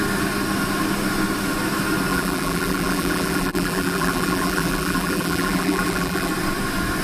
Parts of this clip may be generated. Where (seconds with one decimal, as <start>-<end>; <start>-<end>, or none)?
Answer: 2.1-6.3